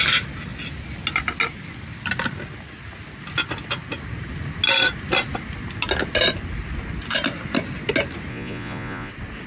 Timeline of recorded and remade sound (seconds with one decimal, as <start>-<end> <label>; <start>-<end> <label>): 0.0-8.3 recorded; 8.3-9.1 remade; 9.1-9.5 recorded